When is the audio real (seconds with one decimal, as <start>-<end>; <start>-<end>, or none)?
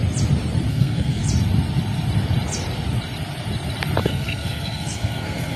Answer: 0.0-0.7; 1.2-4.0